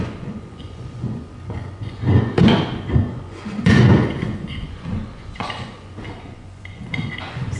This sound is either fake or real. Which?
fake